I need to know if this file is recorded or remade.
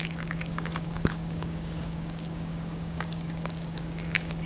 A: remade